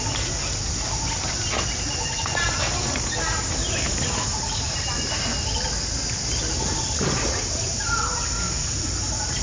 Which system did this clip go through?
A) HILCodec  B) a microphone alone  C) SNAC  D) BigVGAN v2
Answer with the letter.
B